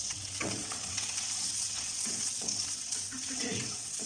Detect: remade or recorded remade